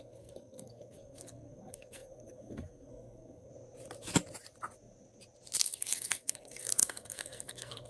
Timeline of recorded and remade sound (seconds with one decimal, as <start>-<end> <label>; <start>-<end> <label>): 0.0-3.5 remade; 3.5-5.6 recorded; 5.6-7.9 remade